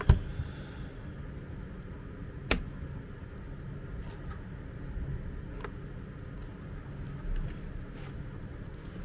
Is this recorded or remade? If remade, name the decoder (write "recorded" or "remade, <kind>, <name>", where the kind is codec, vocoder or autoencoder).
recorded